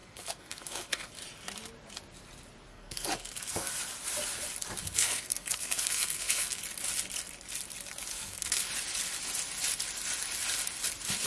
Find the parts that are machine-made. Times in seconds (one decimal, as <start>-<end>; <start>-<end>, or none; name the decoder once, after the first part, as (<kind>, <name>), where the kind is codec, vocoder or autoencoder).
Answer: 0.0-1.1 (codec, SNAC); 2.7-3.8; 4.8-6.6; 8.1-8.7